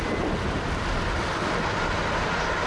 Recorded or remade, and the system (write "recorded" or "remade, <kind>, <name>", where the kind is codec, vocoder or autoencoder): recorded